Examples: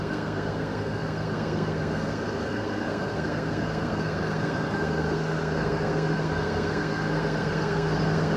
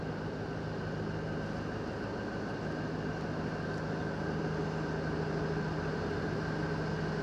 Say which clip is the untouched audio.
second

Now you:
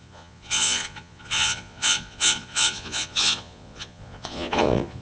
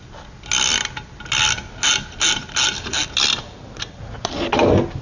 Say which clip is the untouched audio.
second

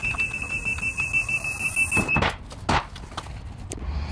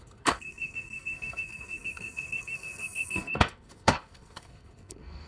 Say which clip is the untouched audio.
first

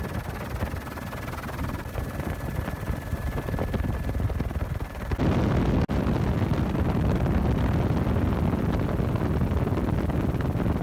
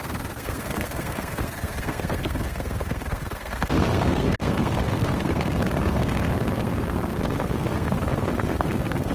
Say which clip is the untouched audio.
first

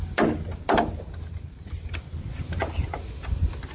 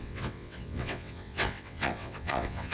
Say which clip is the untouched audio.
first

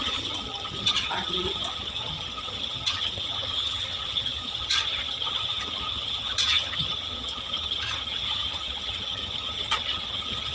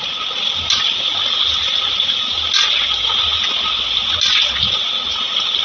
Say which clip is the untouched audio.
second